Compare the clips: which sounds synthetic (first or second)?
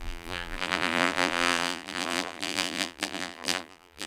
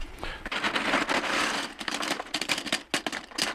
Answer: first